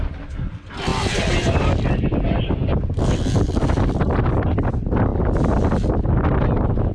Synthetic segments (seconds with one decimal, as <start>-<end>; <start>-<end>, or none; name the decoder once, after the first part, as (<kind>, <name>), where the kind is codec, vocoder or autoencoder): none